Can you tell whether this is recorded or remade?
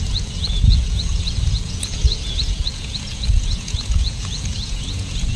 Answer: remade